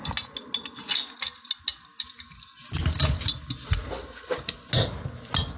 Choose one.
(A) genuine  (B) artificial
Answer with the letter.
A